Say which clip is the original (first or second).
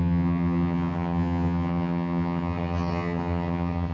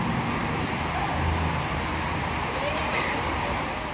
second